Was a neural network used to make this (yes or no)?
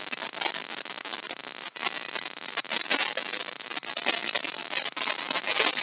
no